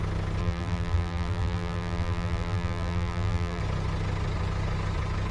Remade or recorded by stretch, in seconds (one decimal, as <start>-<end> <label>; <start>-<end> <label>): 0.0-0.4 recorded; 0.4-3.6 remade; 3.6-5.3 recorded